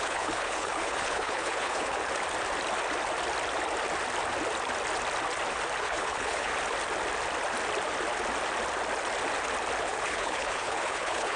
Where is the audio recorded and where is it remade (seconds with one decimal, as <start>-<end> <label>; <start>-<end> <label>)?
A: 0.0-2.0 remade; 2.0-5.8 recorded; 5.8-6.5 remade; 6.5-9.8 recorded; 9.8-11.4 remade